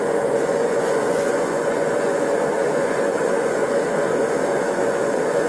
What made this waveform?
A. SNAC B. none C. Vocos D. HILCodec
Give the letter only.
C